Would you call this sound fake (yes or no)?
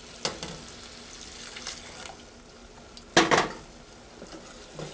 no